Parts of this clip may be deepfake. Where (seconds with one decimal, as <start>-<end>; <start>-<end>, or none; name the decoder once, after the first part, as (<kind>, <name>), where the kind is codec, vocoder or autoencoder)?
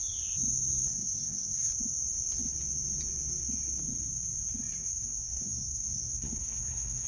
0.9-1.7 (codec, SNAC); 4.8-7.1